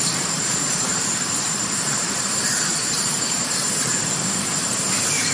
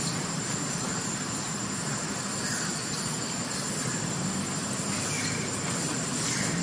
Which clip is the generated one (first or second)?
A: first